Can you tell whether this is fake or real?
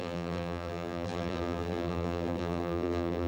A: fake